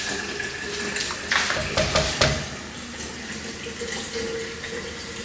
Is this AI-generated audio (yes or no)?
no